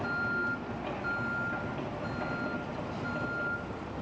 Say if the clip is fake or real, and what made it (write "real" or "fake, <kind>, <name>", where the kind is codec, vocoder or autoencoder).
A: real